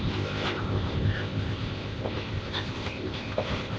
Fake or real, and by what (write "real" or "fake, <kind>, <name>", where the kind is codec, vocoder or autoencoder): fake, codec, ZipCodec